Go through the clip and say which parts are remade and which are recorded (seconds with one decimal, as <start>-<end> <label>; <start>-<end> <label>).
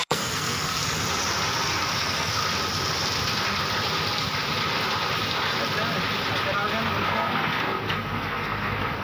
0.0-0.8 remade; 0.8-2.0 recorded; 2.0-2.4 remade; 2.4-6.9 recorded; 6.9-9.0 remade